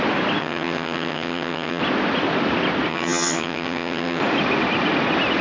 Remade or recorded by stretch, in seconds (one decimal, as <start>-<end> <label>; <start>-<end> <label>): 0.0-0.4 recorded; 0.4-1.8 remade; 1.8-2.9 recorded; 2.9-4.2 remade; 4.2-5.4 recorded